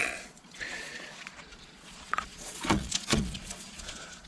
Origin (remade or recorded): remade